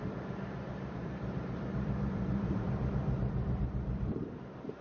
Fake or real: fake